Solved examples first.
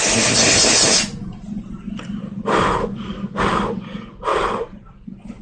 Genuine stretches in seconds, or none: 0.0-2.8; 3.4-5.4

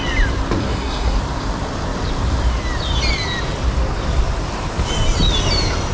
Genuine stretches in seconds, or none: 0.0-0.6; 1.2-5.9